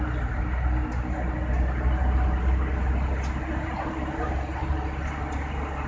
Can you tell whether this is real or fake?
real